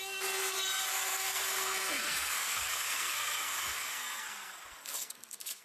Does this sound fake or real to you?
fake